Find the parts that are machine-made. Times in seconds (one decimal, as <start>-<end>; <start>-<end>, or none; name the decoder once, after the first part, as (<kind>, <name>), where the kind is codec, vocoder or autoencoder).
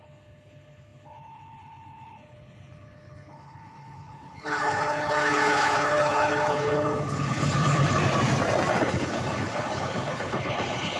0.0-8.0 (codec, HILCodec); 8.8-11.0